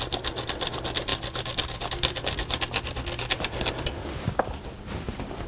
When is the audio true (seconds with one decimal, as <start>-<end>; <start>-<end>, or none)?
0.0-5.5